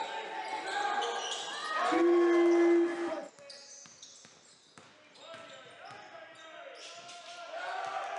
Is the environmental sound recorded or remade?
recorded